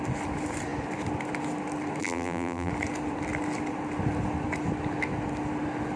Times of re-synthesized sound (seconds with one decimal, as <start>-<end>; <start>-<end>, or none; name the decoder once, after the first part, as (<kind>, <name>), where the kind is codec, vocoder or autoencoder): 2.0-2.7 (vocoder, BigVGAN v2)